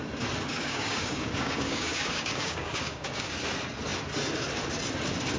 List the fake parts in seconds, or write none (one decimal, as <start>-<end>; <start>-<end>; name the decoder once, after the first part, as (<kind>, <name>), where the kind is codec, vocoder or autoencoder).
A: 0.5-3.3 (codec, DAC)